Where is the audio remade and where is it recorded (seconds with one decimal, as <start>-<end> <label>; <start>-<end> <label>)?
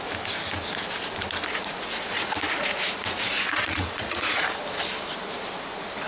0.0-1.6 recorded; 1.6-4.6 remade; 4.6-6.1 recorded